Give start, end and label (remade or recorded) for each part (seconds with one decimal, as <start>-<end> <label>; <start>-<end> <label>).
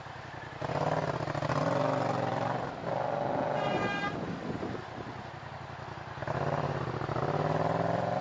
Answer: 0.0-2.3 recorded; 2.3-3.7 remade; 3.7-6.2 recorded; 6.2-8.2 remade